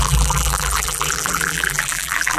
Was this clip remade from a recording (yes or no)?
yes